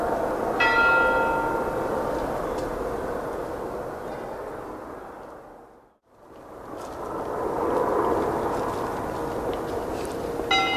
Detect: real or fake real